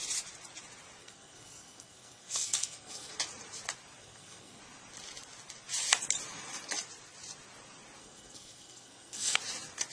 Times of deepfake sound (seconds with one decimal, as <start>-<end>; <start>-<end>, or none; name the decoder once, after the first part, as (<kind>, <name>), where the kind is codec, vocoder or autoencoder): 1.0-3.1 (codec, SNAC); 4.0-4.6; 8.0-9.4